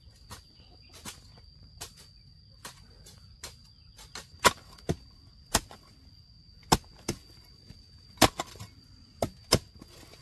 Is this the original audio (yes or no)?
yes